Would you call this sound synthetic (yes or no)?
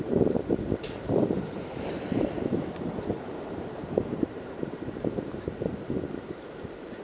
yes